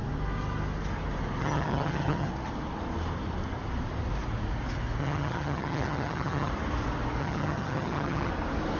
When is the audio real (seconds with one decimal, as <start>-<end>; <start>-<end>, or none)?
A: 0.0-1.4; 2.3-5.0; 6.5-7.2; 8.3-8.8